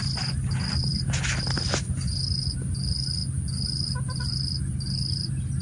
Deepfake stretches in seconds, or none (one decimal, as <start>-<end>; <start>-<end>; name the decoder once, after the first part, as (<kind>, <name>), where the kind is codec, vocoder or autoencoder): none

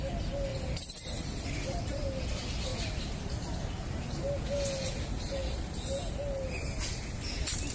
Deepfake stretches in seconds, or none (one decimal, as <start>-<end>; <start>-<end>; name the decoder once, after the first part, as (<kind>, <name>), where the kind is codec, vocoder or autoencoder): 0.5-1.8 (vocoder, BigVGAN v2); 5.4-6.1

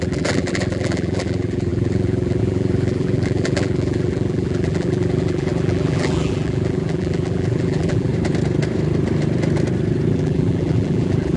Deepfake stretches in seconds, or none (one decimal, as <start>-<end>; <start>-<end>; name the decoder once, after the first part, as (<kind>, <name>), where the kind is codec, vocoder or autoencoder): 0.0-8.1 (vocoder, BigVGAN v2); 10.1-11.4